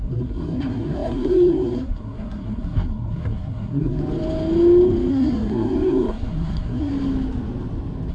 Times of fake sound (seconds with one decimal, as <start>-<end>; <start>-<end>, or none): 0.0-4.0; 5.1-6.9